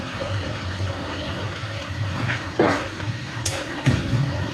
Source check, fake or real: fake